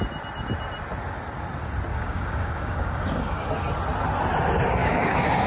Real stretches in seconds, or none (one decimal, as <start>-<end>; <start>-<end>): 0.0-1.9; 3.5-4.8